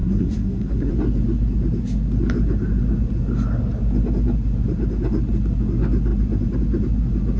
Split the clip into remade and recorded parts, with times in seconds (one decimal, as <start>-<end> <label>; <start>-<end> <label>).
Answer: 0.0-0.9 remade; 0.9-7.4 recorded